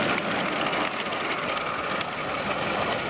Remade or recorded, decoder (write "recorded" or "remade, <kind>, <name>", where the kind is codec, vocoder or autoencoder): recorded